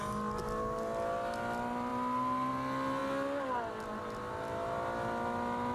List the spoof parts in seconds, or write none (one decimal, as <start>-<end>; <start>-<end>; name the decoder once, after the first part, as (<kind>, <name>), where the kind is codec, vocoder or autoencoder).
none